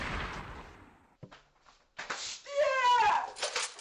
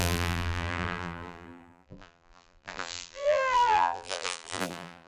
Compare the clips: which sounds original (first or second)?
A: first